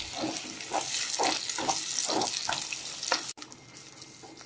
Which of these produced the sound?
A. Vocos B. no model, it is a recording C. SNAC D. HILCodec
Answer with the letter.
B